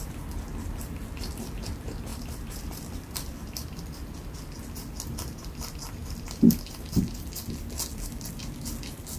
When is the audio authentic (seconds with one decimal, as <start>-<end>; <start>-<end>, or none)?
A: 0.0-2.1; 3.8-7.9; 8.4-9.2